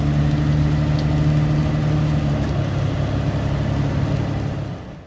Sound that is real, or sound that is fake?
real